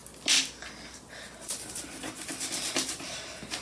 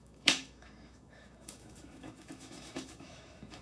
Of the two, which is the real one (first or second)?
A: first